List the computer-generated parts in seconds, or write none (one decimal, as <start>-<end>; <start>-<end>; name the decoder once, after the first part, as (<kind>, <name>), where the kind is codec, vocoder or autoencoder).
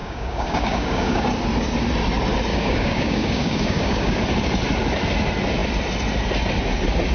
0.0-1.3 (codec, DAC); 2.5-4.2